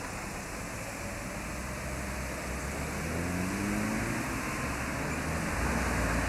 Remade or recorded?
recorded